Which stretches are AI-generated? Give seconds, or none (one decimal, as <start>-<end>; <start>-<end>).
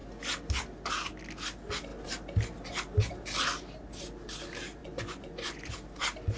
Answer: 4.8-5.7